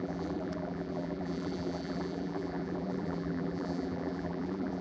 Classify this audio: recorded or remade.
remade